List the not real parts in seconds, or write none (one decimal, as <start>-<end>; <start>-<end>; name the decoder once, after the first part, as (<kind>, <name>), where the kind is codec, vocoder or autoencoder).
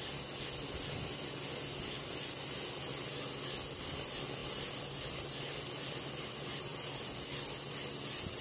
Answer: none